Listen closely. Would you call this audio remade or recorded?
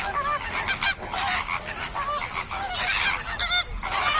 recorded